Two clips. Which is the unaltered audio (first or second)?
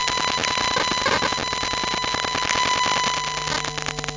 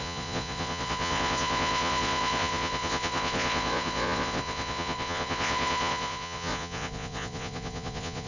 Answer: first